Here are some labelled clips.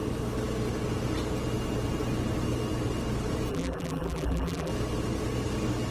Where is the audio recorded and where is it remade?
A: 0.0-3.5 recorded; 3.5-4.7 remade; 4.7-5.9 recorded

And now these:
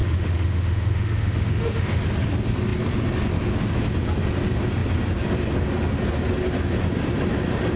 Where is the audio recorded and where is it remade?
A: 0.0-2.0 remade; 2.0-7.8 recorded

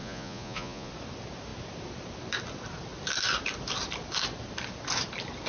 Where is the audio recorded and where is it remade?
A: 0.0-0.9 remade; 0.9-5.5 recorded